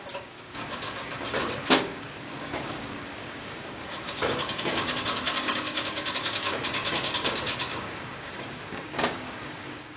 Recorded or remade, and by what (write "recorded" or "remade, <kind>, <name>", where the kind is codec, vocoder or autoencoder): remade, codec, DAC